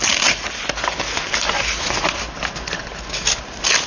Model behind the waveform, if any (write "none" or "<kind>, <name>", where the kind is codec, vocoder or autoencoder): none